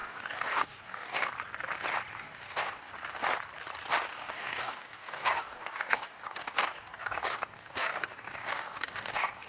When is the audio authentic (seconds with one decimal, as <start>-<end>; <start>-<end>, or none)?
1.3-2.1; 2.9-4.1